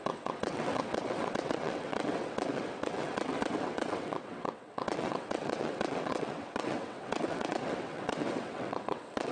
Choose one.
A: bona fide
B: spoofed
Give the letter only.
B